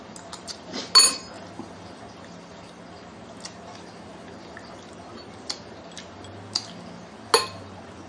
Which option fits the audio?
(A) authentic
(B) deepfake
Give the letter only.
A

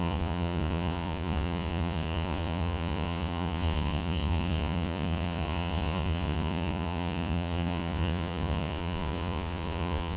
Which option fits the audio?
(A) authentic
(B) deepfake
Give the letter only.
B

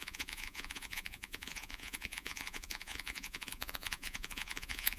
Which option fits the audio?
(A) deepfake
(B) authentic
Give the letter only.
A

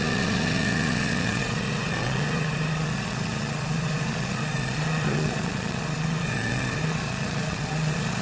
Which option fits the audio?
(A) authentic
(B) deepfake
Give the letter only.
B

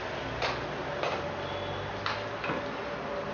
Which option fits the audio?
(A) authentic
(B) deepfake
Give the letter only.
A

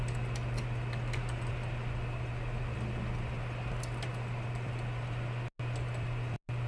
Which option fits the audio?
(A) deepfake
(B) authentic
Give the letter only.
B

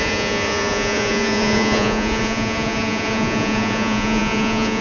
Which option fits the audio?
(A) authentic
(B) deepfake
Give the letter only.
B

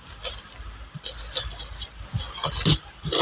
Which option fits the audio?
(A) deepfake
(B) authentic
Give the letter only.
B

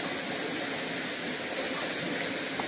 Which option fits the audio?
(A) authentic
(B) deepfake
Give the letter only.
A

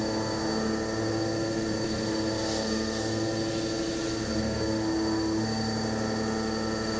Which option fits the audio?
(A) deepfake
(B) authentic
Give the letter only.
B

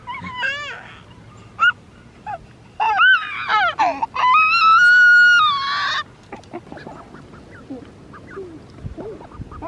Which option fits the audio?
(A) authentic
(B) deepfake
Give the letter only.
A